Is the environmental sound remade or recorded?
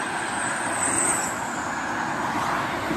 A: recorded